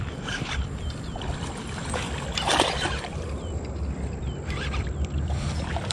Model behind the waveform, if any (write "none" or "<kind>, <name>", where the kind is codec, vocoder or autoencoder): none